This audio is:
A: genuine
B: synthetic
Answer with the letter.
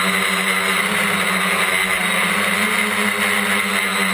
A